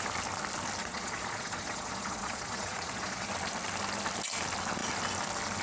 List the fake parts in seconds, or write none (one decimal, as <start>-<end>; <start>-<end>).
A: 0.8-3.3